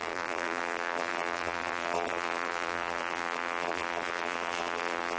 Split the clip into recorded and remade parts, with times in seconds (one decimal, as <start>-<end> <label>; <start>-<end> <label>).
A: 0.0-5.2 remade